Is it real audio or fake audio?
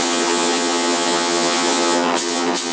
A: fake